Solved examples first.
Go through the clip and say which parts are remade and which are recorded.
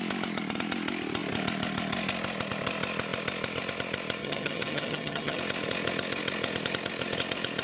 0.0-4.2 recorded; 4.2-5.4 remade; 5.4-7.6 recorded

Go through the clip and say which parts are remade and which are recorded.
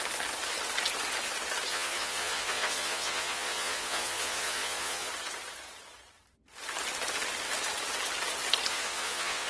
0.0-1.7 recorded; 1.7-5.1 remade; 5.1-8.7 recorded; 8.7-9.5 remade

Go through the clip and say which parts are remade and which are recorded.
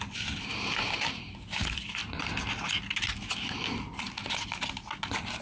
0.0-5.4 recorded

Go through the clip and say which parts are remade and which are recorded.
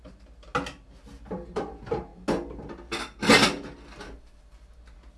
0.0-0.5 remade; 0.5-1.5 recorded; 1.5-2.1 remade; 2.1-5.2 recorded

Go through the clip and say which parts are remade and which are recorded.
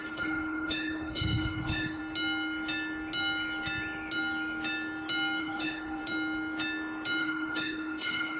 0.0-2.0 remade; 2.0-5.4 recorded; 5.4-6.0 remade; 6.0-7.2 recorded; 7.2-8.4 remade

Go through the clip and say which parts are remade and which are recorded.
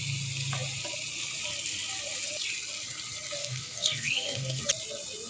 0.0-3.4 recorded; 3.4-4.6 remade; 4.6-5.3 recorded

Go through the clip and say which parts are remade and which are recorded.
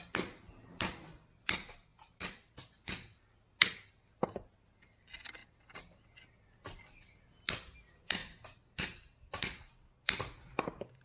0.0-11.0 recorded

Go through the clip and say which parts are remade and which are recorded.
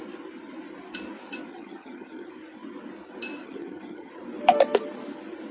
0.0-1.5 recorded; 1.5-2.3 remade; 2.3-3.4 recorded; 3.4-4.1 remade; 4.1-5.5 recorded